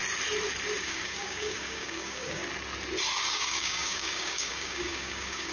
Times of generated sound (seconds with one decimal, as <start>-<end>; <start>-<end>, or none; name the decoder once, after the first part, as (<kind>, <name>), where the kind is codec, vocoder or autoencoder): 0.8-2.4 (codec, DAC); 3.3-5.5